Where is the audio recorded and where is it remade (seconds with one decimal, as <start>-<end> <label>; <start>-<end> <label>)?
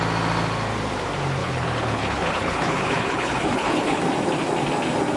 0.0-1.4 recorded; 1.4-4.0 remade; 4.0-5.2 recorded